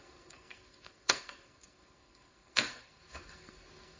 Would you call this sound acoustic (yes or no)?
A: no